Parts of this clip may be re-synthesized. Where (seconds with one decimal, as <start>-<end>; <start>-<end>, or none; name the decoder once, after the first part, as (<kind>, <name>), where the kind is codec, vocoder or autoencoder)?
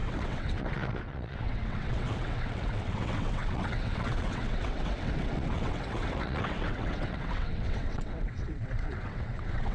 0.0-9.7 (vocoder, WaveNeXt)